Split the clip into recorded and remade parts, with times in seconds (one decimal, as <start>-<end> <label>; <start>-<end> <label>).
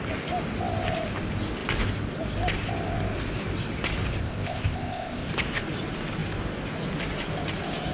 0.0-4.2 recorded; 4.2-5.3 remade; 5.3-7.9 recorded